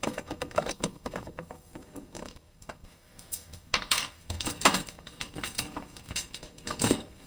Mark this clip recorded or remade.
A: remade